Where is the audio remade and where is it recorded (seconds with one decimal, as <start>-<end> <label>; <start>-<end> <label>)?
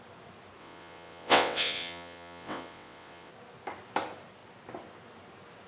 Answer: 0.0-0.6 recorded; 0.6-3.3 remade; 3.3-5.7 recorded